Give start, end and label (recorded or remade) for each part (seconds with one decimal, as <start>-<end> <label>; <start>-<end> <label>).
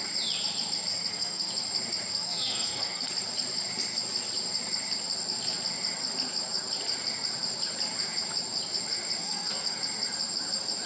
0.0-0.9 recorded; 0.9-1.5 remade; 1.5-2.1 recorded; 2.1-3.1 remade; 3.1-9.2 recorded; 9.2-9.8 remade; 9.8-10.9 recorded